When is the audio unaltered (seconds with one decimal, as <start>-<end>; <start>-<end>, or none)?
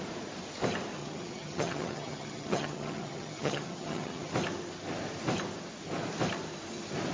0.0-1.0; 4.3-7.1